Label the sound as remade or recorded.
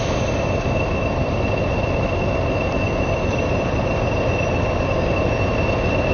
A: recorded